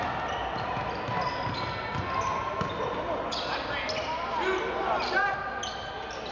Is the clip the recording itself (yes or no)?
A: yes